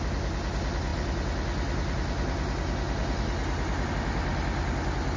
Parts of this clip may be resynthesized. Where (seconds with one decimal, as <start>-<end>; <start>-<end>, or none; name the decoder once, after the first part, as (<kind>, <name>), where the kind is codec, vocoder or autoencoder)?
none